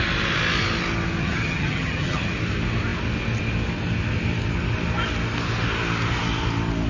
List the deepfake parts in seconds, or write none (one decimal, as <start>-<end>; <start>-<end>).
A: 1.2-2.3